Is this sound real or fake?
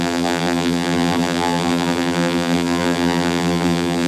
fake